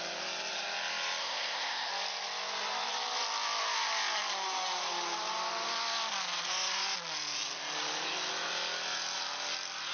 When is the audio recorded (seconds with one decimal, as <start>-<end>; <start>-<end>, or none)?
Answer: 0.0-1.2; 1.9-9.9